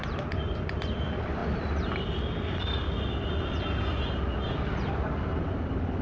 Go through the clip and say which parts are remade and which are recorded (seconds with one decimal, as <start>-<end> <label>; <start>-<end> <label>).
0.0-6.0 recorded